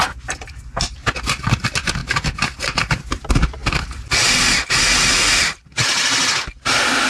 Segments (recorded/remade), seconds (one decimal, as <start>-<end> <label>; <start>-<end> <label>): 0.0-7.1 recorded